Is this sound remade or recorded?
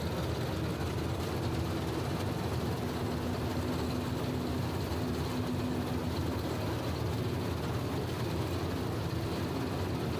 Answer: recorded